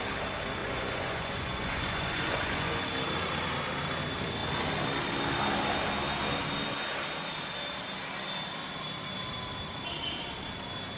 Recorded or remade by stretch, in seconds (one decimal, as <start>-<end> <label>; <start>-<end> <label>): 0.0-0.6 recorded; 0.6-2.9 remade; 2.9-11.0 recorded